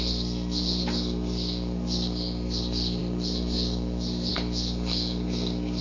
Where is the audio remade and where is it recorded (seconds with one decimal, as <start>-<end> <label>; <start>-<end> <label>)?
0.0-5.8 remade